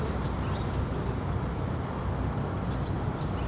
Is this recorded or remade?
recorded